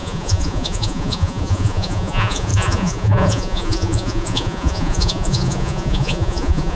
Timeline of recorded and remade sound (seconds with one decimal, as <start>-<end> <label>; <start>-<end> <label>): 0.0-6.7 remade